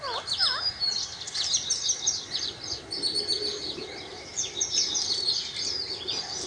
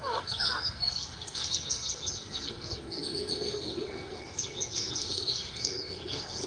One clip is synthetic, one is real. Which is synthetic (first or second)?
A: second